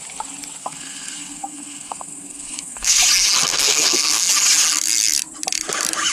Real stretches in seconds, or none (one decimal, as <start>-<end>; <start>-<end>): 0.0-0.6; 3.0-3.5; 4.3-6.1